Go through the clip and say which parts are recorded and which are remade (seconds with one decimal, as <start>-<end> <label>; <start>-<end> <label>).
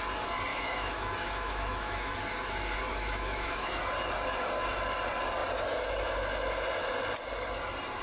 0.0-0.5 recorded; 0.5-2.2 remade; 2.2-2.9 recorded; 2.9-3.8 remade; 3.8-8.0 recorded